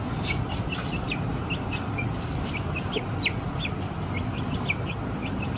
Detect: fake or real real